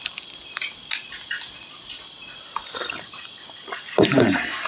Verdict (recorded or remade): recorded